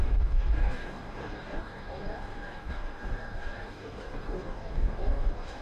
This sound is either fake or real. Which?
fake